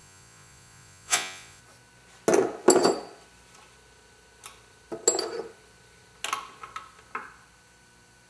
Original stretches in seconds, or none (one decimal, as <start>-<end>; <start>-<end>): 1.6-8.3